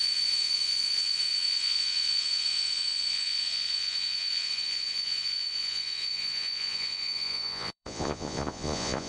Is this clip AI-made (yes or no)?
yes